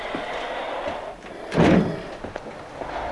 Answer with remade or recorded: recorded